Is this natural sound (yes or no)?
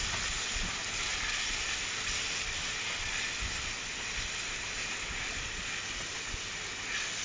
yes